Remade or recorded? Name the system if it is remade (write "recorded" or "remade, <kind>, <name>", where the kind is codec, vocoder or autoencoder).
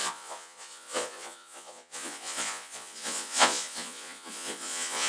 remade, vocoder, Vocos